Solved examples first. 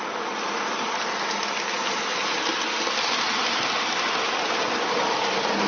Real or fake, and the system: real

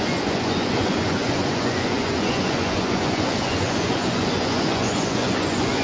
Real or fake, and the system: fake, vocoder, Vocos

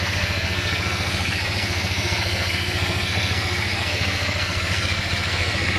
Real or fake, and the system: fake, codec, SNAC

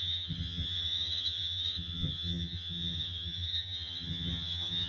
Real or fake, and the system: fake, vocoder, HiFi-GAN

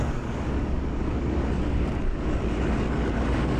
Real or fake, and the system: fake, codec, DAC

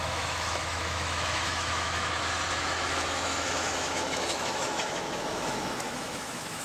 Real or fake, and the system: fake, autoencoder, DAC-VAE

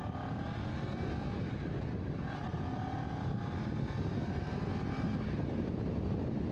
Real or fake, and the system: real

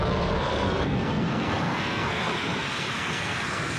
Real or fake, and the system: fake, codec, SNAC